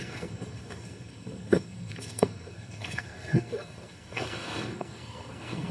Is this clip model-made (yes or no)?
yes